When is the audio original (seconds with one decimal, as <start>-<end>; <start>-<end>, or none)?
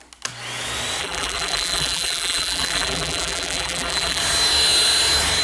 0.0-1.0; 4.2-5.4